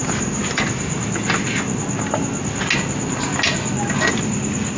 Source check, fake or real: real